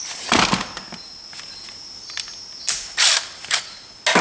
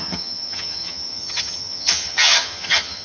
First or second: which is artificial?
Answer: second